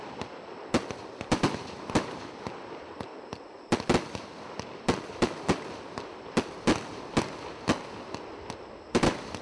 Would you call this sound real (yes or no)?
yes